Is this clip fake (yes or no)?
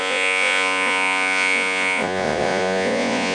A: yes